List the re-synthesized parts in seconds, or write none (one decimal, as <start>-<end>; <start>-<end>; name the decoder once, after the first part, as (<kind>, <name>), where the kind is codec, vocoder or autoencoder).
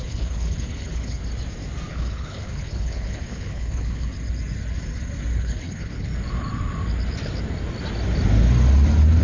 0.0-1.2 (codec, HILCodec); 1.9-4.1; 5.4-6.1